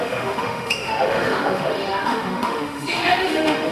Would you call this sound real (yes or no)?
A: no